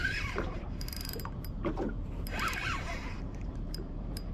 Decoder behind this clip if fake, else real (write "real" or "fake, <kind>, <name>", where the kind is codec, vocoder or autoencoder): fake, vocoder, BigVGAN v2